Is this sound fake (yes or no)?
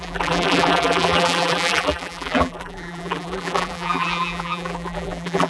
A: yes